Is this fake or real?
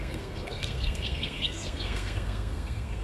fake